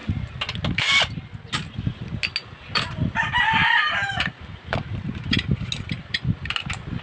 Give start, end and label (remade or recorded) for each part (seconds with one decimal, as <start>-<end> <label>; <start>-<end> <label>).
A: 0.0-3.6 recorded; 3.6-5.7 remade; 5.7-7.0 recorded